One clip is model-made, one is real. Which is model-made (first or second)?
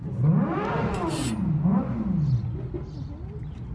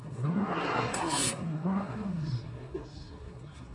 second